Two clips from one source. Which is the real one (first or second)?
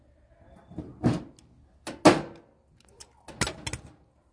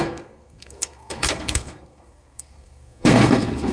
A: first